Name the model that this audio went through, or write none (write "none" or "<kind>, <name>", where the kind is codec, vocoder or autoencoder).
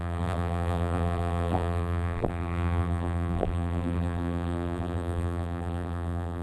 vocoder, BigVGAN v2